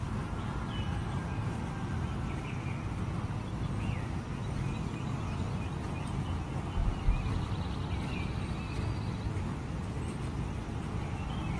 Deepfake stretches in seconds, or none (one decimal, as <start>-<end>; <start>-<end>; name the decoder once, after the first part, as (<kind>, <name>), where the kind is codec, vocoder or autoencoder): none